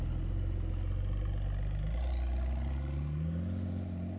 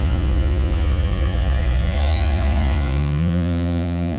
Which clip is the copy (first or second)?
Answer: second